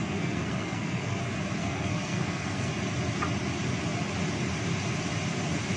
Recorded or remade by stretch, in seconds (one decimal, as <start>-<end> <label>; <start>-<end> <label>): 0.0-1.2 remade; 1.2-1.6 recorded; 1.6-2.7 remade; 2.7-5.8 recorded